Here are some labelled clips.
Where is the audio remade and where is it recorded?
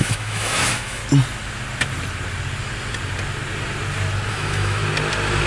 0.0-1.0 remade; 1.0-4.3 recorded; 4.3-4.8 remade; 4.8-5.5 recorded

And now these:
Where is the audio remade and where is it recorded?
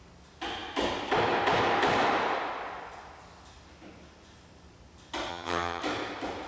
0.0-5.3 recorded; 5.3-5.8 remade; 5.8-6.5 recorded